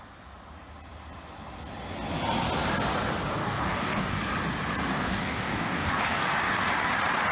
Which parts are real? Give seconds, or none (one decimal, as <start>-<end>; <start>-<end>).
0.0-3.4; 4.2-4.9; 6.3-7.3